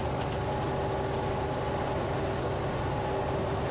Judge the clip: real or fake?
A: real